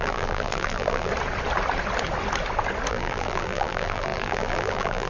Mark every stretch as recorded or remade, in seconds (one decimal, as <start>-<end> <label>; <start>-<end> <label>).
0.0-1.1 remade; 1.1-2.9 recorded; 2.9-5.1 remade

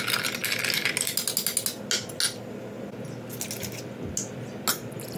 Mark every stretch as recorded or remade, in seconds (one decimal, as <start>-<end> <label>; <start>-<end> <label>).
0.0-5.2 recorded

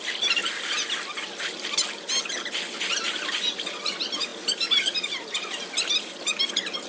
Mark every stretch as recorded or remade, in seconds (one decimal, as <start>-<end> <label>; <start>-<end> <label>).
0.0-6.9 recorded